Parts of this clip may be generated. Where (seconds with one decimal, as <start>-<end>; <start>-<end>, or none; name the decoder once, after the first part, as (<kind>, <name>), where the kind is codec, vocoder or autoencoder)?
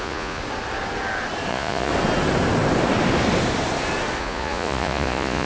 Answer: 0.0-0.4 (vocoder, Vocos); 1.5-1.9; 4.2-5.5